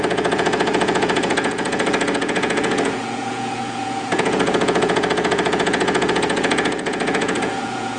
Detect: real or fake fake